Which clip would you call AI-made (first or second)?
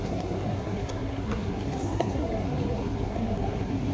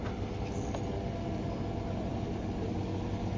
first